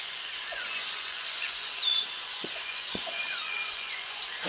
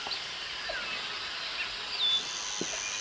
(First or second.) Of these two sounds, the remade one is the first